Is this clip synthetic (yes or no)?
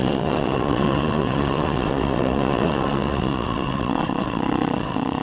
yes